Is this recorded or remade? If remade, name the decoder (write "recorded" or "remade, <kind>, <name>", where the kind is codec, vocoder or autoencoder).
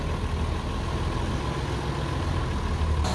recorded